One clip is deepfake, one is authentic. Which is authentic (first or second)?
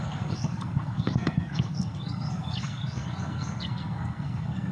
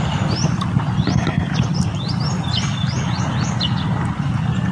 second